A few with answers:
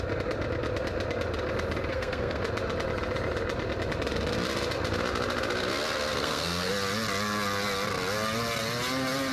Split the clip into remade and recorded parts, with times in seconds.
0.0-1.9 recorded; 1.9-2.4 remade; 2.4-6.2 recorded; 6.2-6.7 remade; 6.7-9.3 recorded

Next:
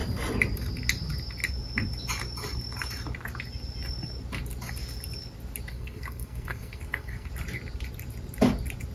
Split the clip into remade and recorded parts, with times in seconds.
0.0-5.7 recorded; 5.7-7.3 remade; 7.3-8.9 recorded